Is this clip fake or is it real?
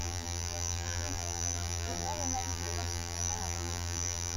fake